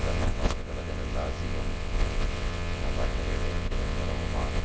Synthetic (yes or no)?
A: yes